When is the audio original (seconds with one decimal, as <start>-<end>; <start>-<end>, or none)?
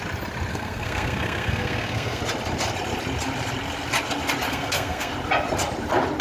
0.0-0.5; 2.2-4.5; 5.1-6.2